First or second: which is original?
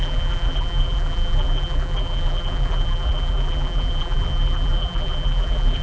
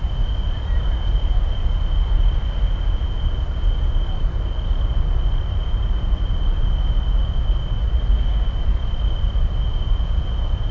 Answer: second